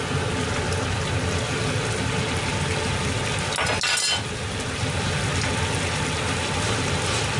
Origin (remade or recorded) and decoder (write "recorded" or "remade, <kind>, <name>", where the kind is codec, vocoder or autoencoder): recorded